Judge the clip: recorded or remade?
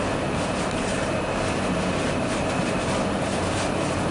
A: recorded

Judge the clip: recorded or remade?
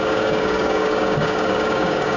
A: remade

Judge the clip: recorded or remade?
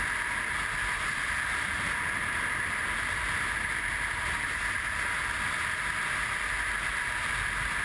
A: recorded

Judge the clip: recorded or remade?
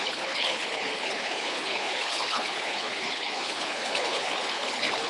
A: remade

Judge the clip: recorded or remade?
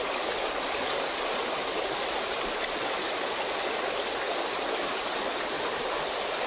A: recorded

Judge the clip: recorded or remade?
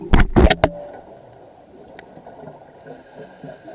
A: recorded